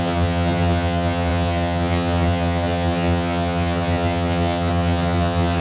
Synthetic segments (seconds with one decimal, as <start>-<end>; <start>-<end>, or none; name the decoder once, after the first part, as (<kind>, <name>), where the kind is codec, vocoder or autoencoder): 0.0-5.6 (vocoder, HiFi-GAN)